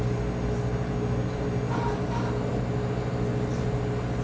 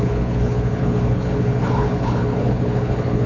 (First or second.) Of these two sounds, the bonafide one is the first